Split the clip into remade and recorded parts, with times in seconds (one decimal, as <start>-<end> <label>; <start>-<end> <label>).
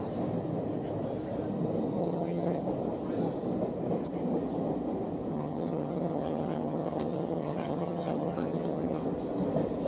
0.0-2.0 recorded; 2.0-2.6 remade; 2.6-5.3 recorded; 5.3-9.0 remade; 9.0-9.9 recorded